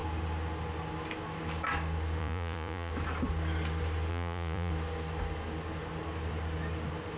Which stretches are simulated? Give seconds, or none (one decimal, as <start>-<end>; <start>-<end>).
2.2-2.9; 4.1-4.7